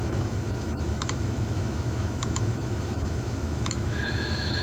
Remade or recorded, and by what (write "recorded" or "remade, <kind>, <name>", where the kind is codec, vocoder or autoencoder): remade, autoencoder, DAC-VAE